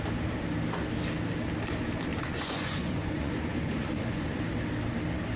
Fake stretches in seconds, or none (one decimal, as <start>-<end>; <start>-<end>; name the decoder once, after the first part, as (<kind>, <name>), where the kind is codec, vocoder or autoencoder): 2.1-4.4 (vocoder, Vocos)